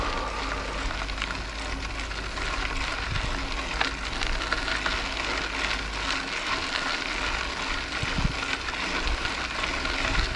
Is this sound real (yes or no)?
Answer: yes